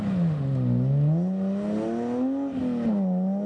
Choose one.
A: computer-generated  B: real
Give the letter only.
B